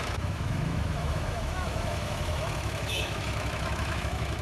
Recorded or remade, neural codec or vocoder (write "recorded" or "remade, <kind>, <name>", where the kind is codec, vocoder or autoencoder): remade, autoencoder, DAC-VAE